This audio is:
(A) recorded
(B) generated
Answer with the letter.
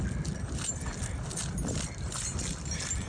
A